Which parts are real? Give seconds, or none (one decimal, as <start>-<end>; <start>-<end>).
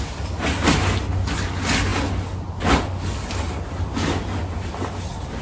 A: 0.0-5.4